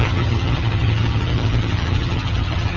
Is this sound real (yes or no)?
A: no